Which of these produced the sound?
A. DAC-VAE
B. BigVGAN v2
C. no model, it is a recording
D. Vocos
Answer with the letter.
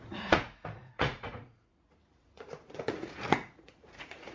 D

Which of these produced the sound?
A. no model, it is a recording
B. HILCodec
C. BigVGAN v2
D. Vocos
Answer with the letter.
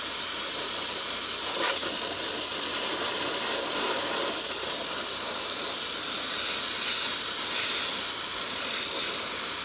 A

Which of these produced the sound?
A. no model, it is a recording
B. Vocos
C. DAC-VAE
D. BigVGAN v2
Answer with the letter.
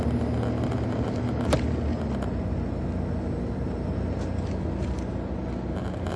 A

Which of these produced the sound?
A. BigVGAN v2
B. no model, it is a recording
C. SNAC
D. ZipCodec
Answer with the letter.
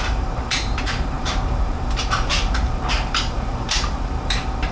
A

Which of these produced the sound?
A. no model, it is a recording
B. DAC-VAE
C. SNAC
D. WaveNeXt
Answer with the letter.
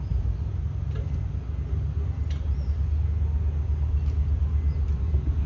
A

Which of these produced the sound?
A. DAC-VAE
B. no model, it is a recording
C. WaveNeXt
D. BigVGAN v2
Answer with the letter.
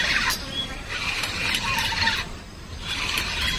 B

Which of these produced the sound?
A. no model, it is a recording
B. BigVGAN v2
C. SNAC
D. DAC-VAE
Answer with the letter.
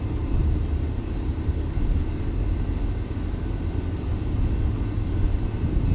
A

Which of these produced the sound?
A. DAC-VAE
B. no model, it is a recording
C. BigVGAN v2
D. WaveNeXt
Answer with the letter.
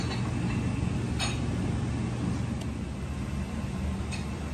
B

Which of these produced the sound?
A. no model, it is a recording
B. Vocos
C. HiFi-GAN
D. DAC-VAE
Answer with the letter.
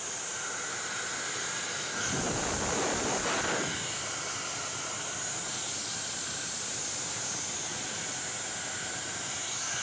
A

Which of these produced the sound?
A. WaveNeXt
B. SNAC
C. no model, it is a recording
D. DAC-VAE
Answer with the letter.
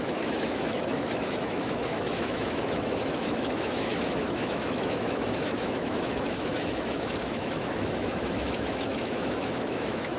D